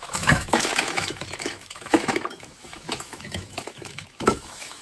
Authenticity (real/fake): fake